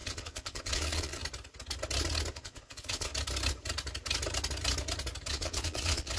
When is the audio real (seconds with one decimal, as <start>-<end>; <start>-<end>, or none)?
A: 1.2-2.3; 3.1-5.3

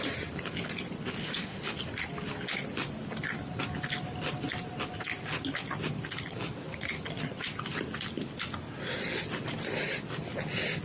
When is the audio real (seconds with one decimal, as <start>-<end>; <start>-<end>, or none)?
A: 0.0-1.2; 1.7-10.8

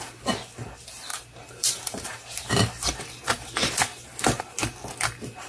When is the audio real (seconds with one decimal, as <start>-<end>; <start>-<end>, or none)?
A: 0.0-1.1; 4.4-5.5

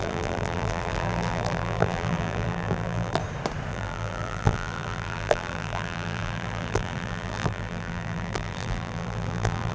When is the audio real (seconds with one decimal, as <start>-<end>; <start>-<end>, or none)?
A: 3.2-3.7

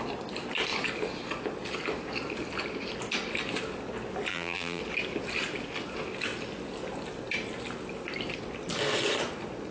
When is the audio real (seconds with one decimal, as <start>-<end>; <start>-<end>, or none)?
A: 0.0-4.3; 4.8-9.7

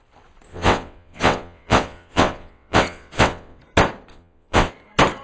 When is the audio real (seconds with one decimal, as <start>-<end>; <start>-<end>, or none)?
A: 0.0-0.5; 3.6-4.1; 4.7-5.2